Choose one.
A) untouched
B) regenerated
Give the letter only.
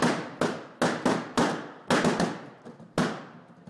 A